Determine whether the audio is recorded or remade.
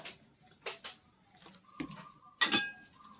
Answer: recorded